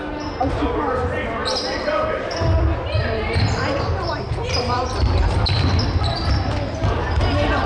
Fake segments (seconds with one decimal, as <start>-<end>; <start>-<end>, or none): 1.4-2.6; 3.0-7.3